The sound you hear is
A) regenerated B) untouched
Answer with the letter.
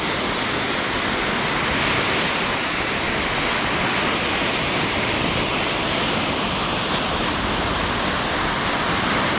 B